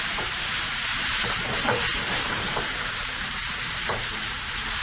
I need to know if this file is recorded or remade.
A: remade